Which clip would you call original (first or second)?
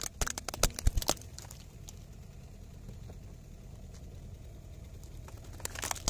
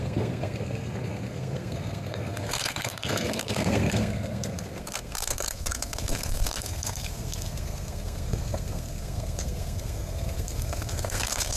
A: first